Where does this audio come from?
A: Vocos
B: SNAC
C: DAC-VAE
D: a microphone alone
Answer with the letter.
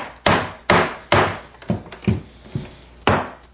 D